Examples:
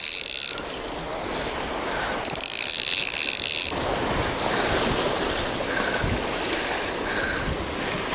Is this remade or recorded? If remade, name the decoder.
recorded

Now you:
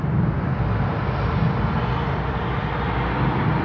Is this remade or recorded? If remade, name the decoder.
recorded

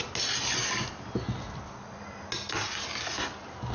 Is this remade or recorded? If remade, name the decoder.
recorded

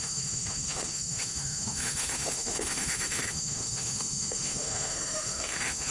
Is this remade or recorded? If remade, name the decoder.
remade, autoencoder, DAC-VAE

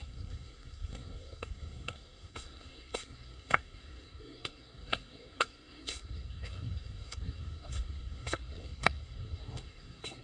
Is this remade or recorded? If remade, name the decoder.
remade, codec, SNAC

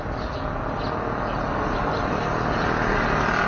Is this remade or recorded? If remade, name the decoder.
recorded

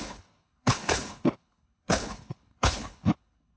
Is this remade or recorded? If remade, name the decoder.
remade, codec, HILCodec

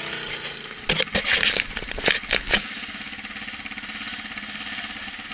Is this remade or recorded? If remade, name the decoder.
recorded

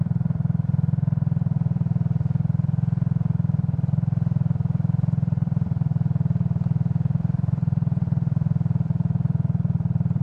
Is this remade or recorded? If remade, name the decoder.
remade, vocoder, BigVGAN v2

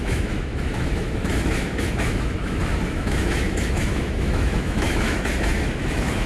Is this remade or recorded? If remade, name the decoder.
remade, autoencoder, DAC-VAE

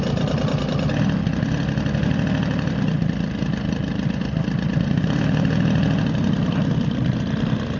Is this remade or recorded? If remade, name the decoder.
recorded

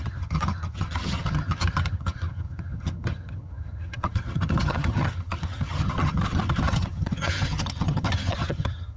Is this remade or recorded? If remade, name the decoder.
remade, vocoder, HiFi-GAN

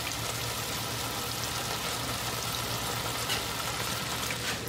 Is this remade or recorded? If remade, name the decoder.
recorded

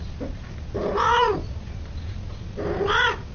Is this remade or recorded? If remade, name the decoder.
recorded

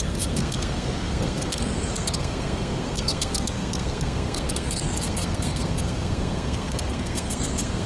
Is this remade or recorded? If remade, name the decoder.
remade, codec, SNAC